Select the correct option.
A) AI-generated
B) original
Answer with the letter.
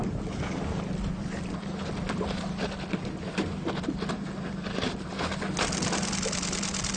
B